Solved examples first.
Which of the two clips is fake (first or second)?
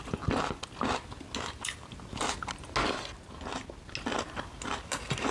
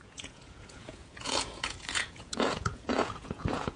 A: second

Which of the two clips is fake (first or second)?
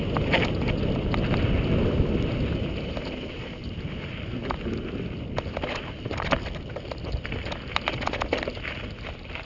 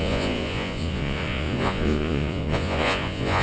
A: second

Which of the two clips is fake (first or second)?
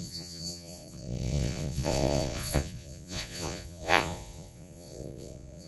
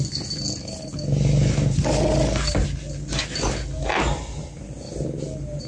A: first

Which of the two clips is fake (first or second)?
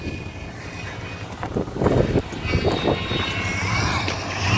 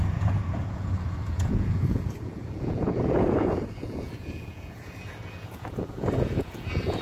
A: second